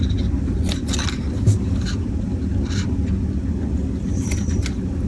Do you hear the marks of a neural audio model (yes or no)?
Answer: no